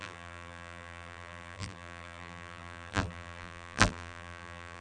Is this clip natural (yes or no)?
no